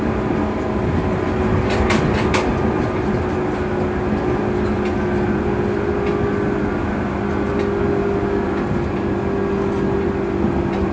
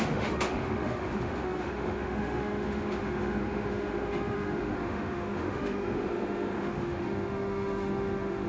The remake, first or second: second